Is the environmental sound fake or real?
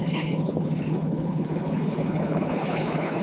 fake